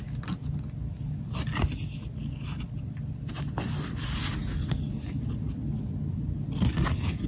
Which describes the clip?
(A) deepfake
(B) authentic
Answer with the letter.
B